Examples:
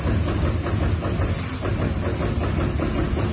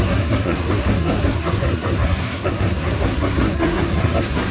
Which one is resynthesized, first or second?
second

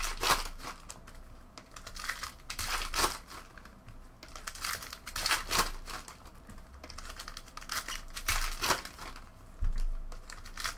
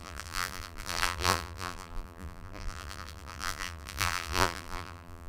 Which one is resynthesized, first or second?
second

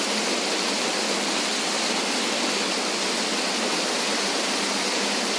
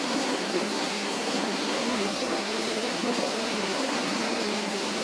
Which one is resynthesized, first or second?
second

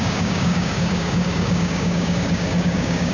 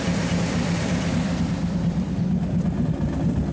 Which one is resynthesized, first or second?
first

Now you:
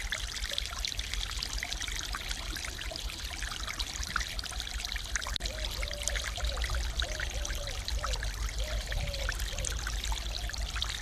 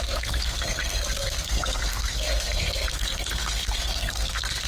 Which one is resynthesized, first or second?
second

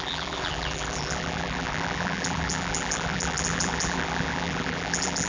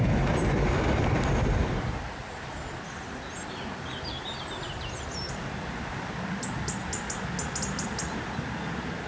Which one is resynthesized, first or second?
first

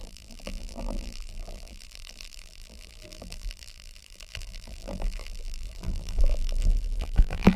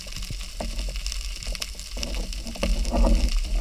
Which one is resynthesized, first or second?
first